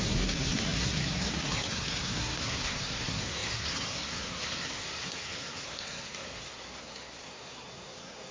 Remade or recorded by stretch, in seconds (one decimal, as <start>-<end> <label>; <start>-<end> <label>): 0.0-8.3 remade